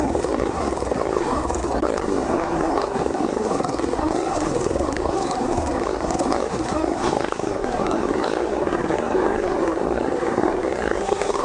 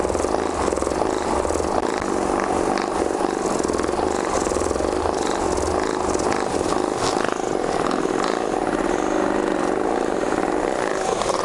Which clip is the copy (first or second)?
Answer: first